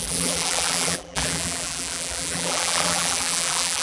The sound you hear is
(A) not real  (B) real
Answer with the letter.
A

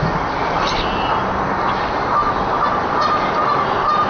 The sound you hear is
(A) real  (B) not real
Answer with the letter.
A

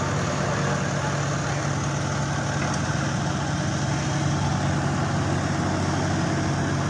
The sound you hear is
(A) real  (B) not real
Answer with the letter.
A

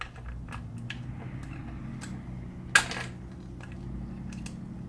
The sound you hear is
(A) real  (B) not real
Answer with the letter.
A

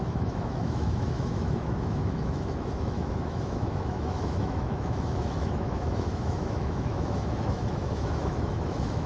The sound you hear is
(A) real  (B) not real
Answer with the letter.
B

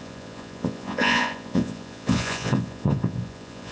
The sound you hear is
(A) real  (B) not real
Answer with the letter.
B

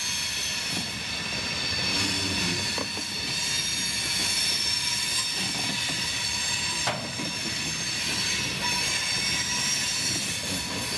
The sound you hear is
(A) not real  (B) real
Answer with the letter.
B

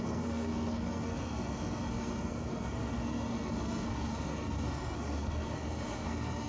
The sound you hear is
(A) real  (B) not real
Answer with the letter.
B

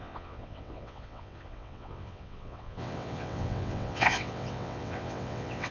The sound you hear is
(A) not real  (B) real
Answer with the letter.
A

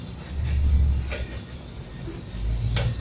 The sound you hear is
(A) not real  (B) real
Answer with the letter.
B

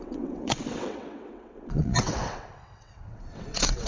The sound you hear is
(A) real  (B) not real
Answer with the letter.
B